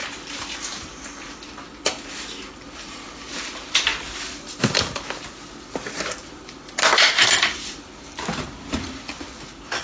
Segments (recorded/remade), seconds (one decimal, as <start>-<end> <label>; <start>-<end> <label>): 0.0-3.9 remade; 3.9-6.2 recorded; 6.2-9.8 remade